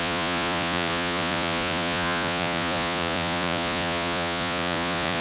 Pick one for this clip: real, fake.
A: fake